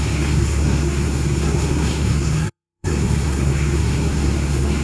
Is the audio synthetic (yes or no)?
yes